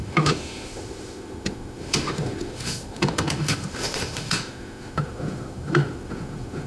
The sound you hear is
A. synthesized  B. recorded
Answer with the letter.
A